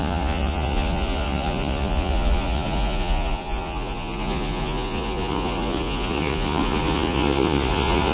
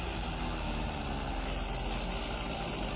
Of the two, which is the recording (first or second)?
second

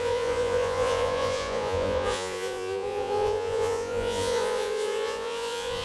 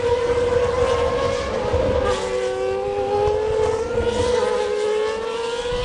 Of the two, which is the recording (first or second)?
second